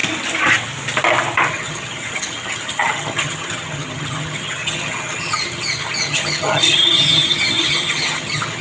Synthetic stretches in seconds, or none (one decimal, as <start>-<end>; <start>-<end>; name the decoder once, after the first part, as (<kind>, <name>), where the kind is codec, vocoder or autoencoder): 1.5-8.6 (vocoder, HiFi-GAN)